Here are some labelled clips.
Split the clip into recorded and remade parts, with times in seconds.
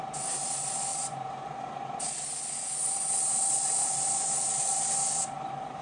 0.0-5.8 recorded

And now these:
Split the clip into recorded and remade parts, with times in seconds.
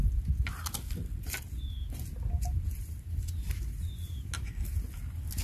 0.0-5.4 recorded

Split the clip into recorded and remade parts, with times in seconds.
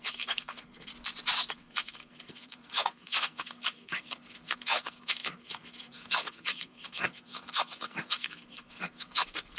0.0-0.9 remade; 0.9-1.5 recorded; 1.5-9.6 remade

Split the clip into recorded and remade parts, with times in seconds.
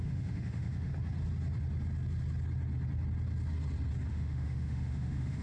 0.0-0.9 remade; 0.9-4.1 recorded; 4.1-5.4 remade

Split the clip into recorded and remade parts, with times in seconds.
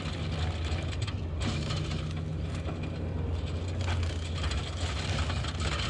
0.0-5.9 recorded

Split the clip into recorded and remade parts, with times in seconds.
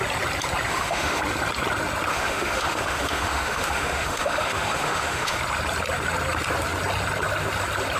0.0-0.7 recorded; 0.7-1.2 remade; 1.2-2.1 recorded; 2.1-5.4 remade; 5.4-8.0 recorded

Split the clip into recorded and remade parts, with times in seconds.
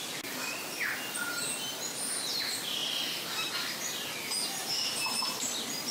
0.0-2.8 recorded; 2.8-3.8 remade; 3.8-4.6 recorded; 4.6-5.2 remade; 5.2-5.9 recorded